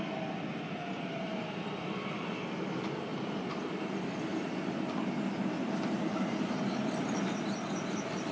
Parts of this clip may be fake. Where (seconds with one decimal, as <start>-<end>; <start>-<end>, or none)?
3.1-3.7